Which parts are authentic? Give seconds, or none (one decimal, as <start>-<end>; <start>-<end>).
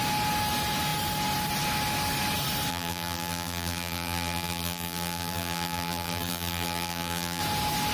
0.0-2.7; 7.4-7.9